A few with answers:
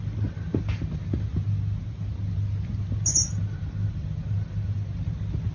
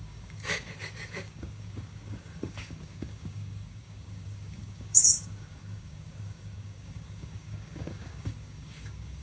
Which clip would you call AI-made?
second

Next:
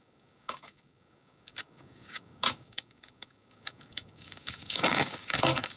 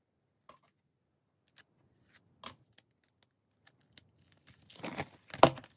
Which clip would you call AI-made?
first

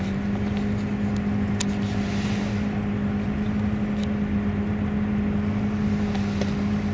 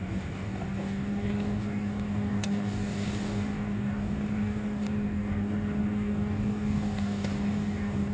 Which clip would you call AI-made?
second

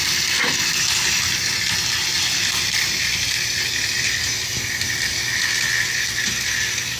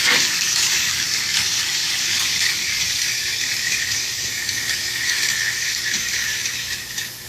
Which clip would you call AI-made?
second